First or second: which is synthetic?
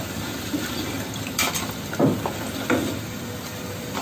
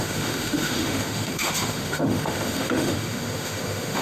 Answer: second